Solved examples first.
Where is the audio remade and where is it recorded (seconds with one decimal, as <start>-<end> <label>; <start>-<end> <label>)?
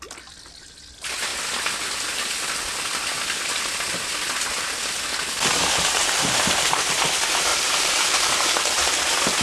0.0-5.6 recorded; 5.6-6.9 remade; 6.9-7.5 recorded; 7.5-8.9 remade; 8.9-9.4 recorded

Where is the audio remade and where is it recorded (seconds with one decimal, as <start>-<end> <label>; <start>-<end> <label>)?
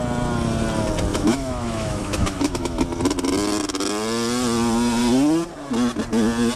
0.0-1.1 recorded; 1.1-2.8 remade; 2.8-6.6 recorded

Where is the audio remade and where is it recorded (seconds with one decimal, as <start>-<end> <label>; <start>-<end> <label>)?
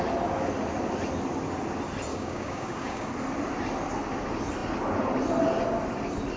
0.0-2.1 recorded; 2.1-3.1 remade; 3.1-6.4 recorded